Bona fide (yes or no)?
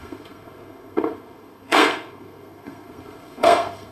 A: no